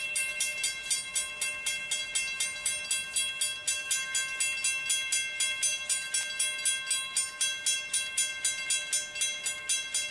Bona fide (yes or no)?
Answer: yes